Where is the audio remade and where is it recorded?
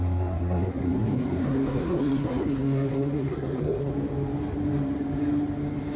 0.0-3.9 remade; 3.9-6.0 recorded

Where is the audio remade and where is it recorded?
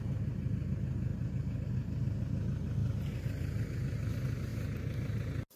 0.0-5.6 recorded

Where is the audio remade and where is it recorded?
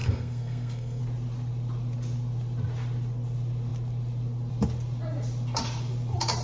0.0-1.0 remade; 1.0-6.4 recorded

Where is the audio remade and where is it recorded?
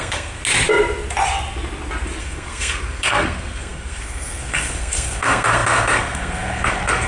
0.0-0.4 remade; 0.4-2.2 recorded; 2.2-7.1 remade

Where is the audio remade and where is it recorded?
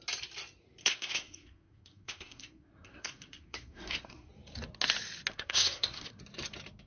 0.0-0.8 recorded; 0.8-4.3 remade; 4.3-5.3 recorded; 5.3-6.2 remade; 6.2-6.9 recorded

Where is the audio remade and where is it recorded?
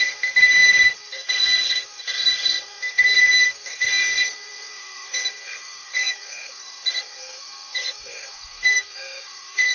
0.0-9.7 remade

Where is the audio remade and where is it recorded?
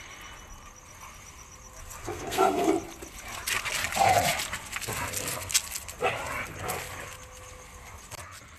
0.0-2.0 recorded; 2.0-2.7 remade; 2.7-8.6 recorded